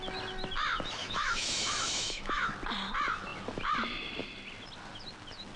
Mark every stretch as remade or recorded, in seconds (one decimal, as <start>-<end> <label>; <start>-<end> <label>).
0.0-1.0 recorded; 1.0-2.5 remade; 2.5-5.6 recorded